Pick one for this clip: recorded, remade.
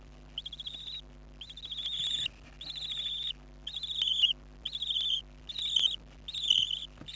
recorded